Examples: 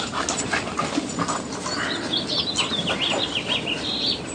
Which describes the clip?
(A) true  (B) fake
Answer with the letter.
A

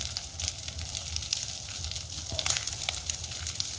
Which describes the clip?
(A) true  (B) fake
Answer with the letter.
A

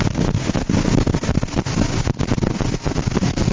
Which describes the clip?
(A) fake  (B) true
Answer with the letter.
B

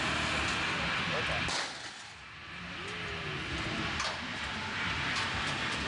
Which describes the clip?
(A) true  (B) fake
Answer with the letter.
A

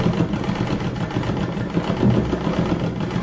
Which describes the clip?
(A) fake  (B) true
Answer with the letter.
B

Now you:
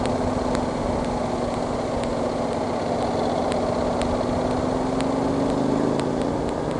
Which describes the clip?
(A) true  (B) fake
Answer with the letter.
A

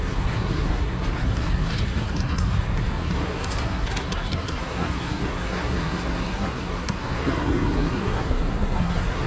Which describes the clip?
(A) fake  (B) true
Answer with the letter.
A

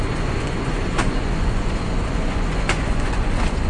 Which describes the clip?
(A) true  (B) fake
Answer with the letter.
B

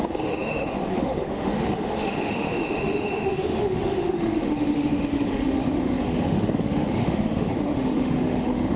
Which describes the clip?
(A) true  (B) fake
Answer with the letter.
B